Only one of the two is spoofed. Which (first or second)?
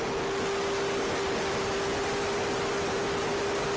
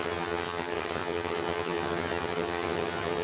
second